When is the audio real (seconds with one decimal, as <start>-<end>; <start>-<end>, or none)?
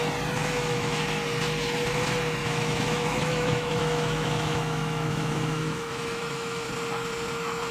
0.0-0.4; 1.0-2.4; 6.7-7.7